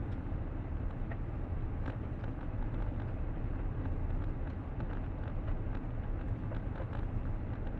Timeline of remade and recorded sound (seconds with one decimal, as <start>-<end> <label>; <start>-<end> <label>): 0.0-1.3 remade; 1.3-7.8 recorded

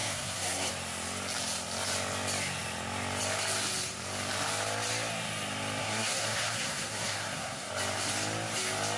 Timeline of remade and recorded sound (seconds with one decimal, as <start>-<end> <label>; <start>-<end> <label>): 0.0-0.7 remade; 0.7-5.8 recorded; 5.8-7.7 remade; 7.7-9.0 recorded